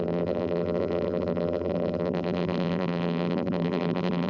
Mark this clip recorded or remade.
remade